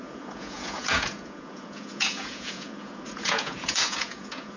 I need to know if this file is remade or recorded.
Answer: remade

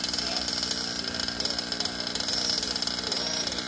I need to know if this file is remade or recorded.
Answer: recorded